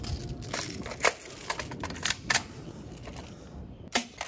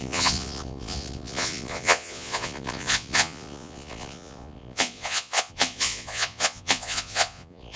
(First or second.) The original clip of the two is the first